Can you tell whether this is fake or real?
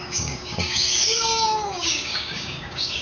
fake